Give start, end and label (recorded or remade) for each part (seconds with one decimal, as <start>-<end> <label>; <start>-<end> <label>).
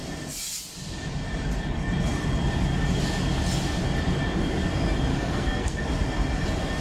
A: 0.0-5.1 recorded; 5.1-5.8 remade; 5.8-6.8 recorded